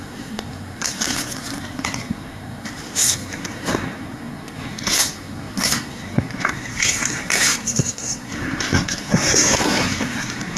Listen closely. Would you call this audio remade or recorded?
remade